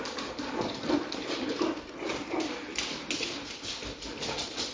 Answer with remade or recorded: recorded